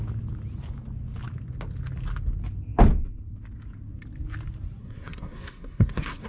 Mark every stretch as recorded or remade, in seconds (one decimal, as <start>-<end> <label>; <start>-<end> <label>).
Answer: 0.0-4.8 recorded; 4.8-6.3 remade